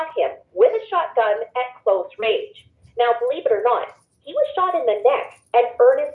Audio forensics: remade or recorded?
recorded